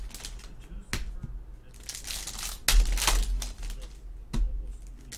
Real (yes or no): yes